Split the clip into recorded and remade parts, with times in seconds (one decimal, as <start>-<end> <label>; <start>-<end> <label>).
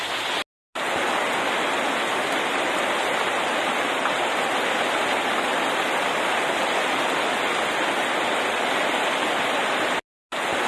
0.0-10.7 recorded